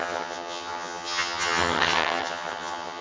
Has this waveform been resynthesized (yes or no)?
yes